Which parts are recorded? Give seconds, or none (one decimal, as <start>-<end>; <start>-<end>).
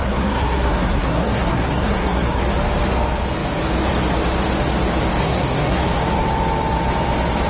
2.4-5.2; 5.8-7.5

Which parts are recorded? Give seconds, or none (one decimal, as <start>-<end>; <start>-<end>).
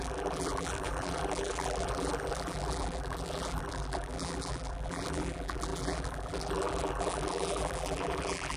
none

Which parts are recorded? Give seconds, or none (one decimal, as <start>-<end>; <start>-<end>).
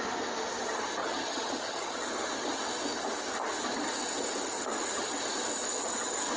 0.0-1.0; 2.0-6.4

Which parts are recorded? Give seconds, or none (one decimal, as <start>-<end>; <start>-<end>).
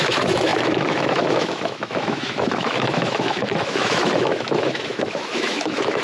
none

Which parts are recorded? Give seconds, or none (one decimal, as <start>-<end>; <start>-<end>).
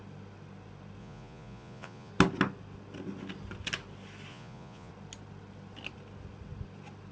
0.0-1.0; 2.1-4.3; 4.9-7.1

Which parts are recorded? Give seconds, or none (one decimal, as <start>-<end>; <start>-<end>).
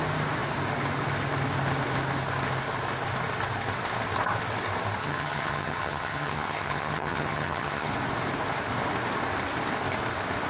0.0-5.0; 7.9-10.5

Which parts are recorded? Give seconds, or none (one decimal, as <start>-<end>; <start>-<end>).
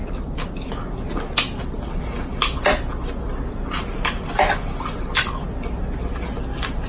0.0-6.9